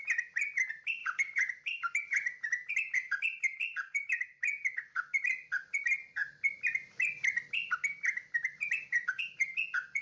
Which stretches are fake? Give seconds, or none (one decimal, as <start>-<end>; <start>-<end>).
1.0-2.7